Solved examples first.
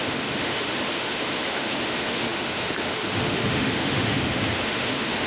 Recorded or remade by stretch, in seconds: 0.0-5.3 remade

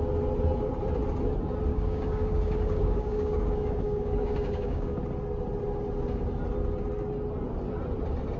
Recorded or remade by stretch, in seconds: 0.0-1.7 recorded; 1.7-5.0 remade; 5.0-8.4 recorded